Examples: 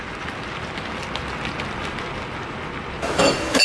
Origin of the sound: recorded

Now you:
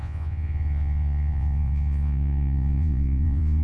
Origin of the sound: remade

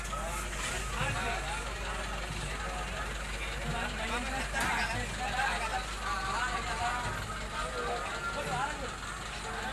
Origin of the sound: recorded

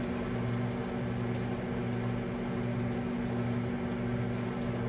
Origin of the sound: recorded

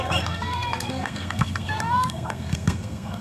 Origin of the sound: remade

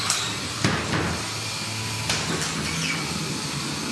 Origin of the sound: recorded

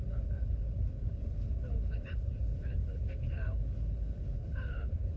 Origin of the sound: remade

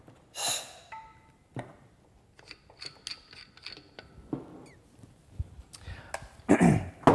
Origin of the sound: recorded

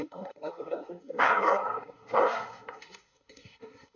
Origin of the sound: remade